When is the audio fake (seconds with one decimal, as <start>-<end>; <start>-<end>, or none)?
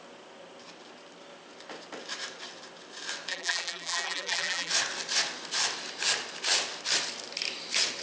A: 3.3-4.7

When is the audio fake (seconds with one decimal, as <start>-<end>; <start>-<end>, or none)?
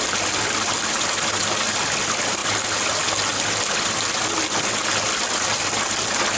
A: none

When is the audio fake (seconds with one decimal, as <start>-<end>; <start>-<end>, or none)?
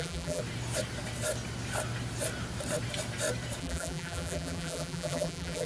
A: 0.0-0.4; 3.6-5.7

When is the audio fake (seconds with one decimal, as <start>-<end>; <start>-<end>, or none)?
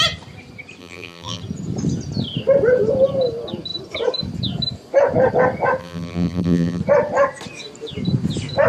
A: 0.8-1.4; 5.8-6.8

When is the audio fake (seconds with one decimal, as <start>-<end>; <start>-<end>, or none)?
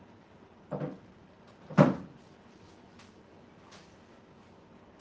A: none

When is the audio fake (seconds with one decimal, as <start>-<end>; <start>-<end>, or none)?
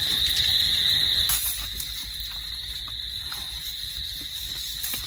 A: none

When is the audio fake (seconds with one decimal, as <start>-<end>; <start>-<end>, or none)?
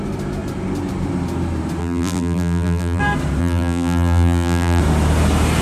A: 1.8-3.0; 3.4-4.8